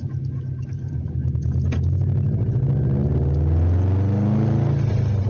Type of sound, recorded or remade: recorded